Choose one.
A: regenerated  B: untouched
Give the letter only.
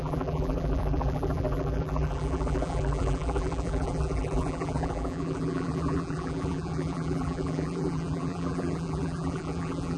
A